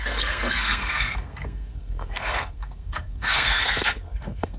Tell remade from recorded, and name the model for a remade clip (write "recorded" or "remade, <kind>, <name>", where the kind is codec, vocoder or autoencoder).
remade, codec, SNAC